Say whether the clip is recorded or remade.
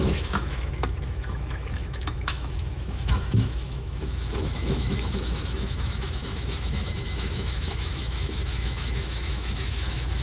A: remade